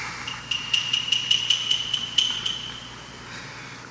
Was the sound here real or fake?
real